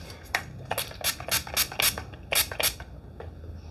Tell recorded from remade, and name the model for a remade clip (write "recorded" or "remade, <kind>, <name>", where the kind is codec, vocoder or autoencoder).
recorded